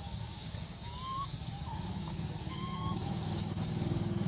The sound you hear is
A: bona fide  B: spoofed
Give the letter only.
B